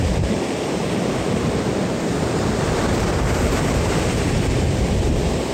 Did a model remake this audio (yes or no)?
yes